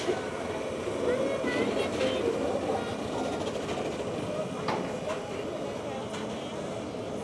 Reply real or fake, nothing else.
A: real